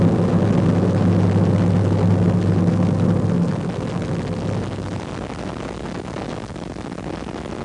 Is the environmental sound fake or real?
real